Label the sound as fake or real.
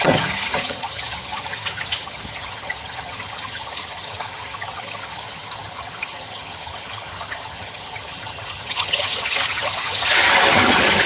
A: fake